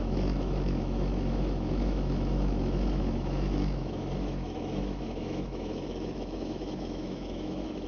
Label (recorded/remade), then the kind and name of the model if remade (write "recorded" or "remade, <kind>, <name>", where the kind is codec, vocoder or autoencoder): remade, autoencoder, DAC-VAE